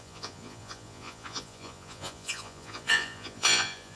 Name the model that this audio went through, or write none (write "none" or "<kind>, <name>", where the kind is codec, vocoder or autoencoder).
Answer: vocoder, Vocos